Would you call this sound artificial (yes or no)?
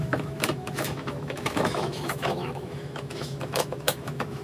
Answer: yes